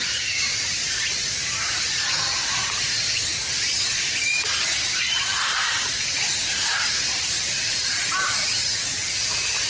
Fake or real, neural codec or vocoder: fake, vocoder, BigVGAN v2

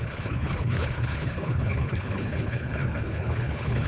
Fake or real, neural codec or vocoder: fake, codec, HILCodec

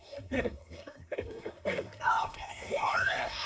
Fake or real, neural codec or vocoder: fake, codec, SNAC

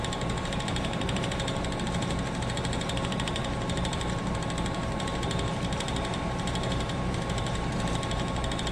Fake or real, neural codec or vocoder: fake, vocoder, BigVGAN v2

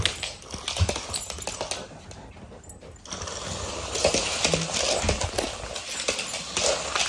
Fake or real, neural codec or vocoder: real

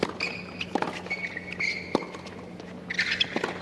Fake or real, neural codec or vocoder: real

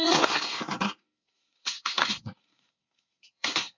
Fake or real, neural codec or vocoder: fake, codec, SNAC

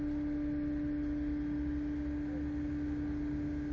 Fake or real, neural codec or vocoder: real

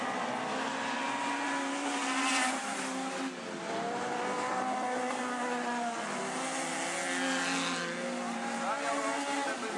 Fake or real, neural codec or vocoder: real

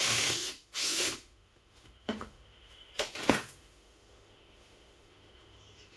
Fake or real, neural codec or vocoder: fake, autoencoder, DAC-VAE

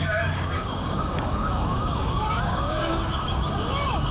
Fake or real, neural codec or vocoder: fake, codec, DAC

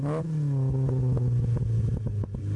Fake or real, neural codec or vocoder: real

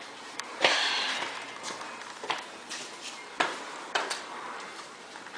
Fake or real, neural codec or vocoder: fake, vocoder, BigVGAN v2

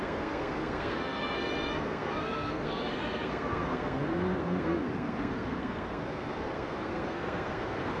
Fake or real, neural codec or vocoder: fake, codec, SNAC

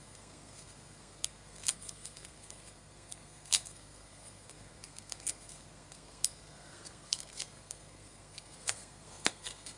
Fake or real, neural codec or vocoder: fake, codec, SNAC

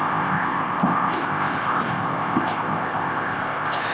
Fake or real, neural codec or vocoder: fake, codec, ZipCodec